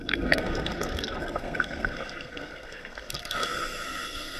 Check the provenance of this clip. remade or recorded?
remade